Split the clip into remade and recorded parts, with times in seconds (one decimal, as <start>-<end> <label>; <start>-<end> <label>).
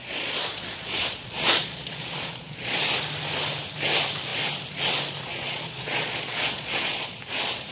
0.0-2.8 remade; 2.8-5.3 recorded; 5.3-7.2 remade; 7.2-7.7 recorded